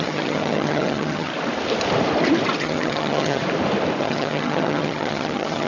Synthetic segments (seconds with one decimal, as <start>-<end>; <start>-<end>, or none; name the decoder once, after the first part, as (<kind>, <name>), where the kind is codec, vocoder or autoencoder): 0.0-1.3 (vocoder, HiFi-GAN); 2.6-3.4; 4.0-5.7